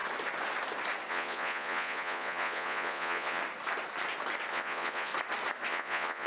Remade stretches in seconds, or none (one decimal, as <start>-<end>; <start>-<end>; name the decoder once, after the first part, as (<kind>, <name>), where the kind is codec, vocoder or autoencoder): 1.1-3.4 (vocoder, Vocos); 4.5-5.1; 5.7-6.3